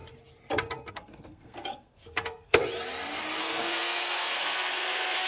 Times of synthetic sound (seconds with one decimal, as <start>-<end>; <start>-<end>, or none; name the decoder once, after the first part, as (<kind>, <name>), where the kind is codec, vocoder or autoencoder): 0.9-2.6 (codec, SNAC); 3.4-5.3